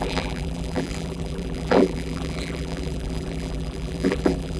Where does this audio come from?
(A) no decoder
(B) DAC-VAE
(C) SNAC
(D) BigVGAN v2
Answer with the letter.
D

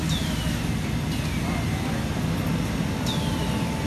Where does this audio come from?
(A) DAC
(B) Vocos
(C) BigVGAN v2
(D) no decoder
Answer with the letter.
D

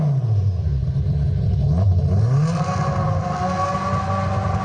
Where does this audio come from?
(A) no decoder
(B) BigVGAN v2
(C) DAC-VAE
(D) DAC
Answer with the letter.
A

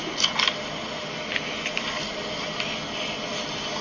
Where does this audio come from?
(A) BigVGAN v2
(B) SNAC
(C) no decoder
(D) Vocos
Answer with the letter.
C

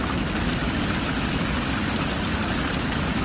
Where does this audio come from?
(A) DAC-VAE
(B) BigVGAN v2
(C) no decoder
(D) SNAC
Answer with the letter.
C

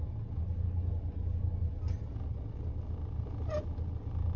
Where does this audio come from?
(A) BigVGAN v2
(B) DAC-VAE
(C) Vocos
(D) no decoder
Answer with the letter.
D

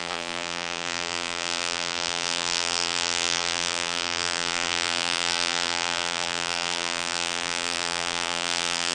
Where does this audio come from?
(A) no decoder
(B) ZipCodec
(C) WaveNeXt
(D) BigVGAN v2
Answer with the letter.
D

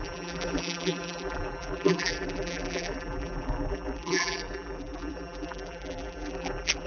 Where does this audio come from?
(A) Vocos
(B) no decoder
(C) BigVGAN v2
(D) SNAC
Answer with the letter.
C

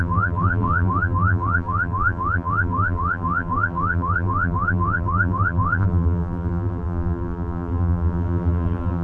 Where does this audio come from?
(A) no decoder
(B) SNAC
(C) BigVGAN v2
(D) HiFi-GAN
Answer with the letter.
C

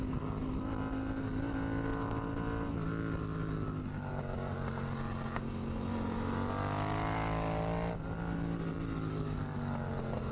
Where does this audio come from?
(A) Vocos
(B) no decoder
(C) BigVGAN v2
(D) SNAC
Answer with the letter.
B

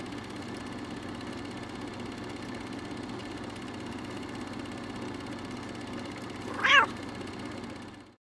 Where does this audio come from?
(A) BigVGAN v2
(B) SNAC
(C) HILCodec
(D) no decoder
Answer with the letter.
D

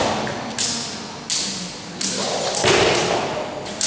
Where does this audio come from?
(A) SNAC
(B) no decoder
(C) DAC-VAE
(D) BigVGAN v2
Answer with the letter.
B